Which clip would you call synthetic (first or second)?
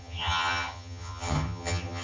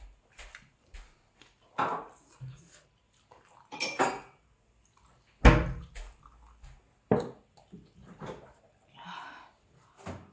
first